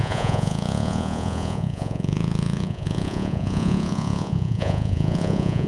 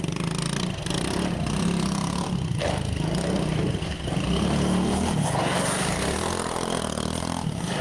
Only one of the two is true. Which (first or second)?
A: second